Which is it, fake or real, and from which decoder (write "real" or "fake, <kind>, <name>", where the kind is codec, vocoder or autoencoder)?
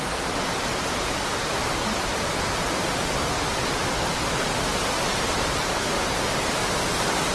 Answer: real